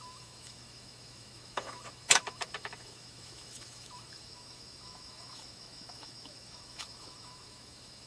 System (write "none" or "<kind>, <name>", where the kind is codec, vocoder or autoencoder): autoencoder, DAC-VAE